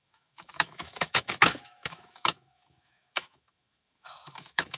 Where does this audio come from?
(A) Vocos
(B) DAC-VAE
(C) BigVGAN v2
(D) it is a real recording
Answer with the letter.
B